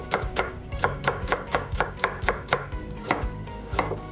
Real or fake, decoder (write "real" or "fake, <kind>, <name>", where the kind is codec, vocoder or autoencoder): fake, codec, DAC